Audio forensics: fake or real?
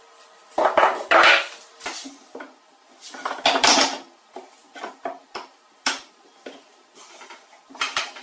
real